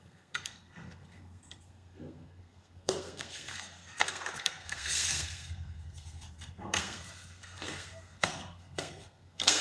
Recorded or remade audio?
remade